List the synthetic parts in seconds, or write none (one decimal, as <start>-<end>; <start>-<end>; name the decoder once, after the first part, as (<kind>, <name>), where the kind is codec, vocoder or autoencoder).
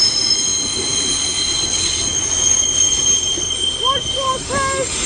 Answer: none